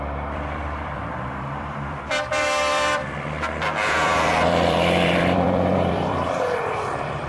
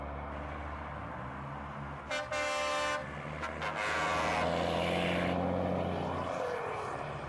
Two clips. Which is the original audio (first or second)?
second